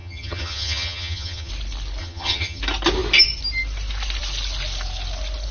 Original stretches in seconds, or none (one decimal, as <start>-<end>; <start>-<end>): 1.5-2.0; 2.6-5.5